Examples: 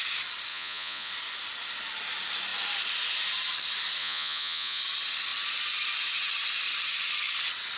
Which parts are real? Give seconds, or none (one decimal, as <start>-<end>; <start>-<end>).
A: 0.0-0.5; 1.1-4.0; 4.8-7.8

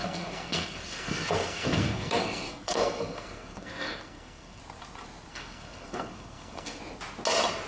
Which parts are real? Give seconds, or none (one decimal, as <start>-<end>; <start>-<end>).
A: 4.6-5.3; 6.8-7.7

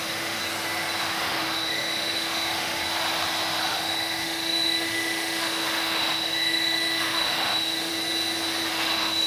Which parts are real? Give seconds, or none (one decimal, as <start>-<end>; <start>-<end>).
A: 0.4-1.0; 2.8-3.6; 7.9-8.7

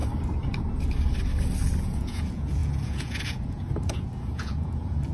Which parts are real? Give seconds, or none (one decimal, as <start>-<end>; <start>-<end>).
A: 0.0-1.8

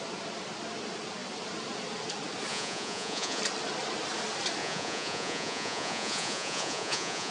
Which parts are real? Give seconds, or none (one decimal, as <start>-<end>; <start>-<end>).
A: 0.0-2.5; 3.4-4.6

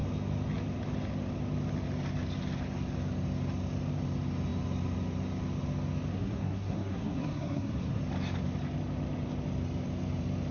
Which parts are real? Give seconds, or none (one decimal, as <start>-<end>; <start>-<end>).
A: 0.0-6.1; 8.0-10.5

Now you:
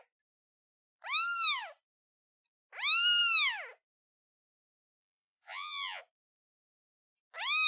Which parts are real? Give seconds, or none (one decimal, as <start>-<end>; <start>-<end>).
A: 0.0-5.0; 6.0-7.7